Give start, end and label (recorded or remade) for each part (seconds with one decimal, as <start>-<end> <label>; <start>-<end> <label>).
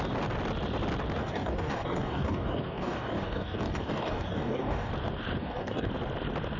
0.0-1.2 recorded; 1.2-4.9 remade; 4.9-5.4 recorded; 5.4-5.9 remade; 5.9-6.6 recorded